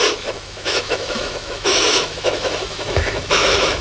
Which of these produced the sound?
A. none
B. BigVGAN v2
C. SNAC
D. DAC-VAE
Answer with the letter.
D